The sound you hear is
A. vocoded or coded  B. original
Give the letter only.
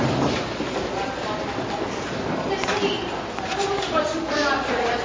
B